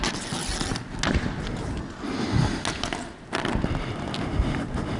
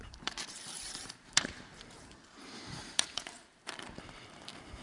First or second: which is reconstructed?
second